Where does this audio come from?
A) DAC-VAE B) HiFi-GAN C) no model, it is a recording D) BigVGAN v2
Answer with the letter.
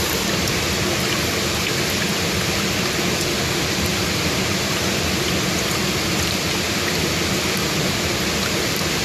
C